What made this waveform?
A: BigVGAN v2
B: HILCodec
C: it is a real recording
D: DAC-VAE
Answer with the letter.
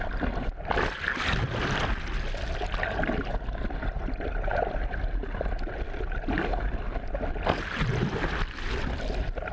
A